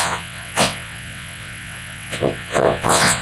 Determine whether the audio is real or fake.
fake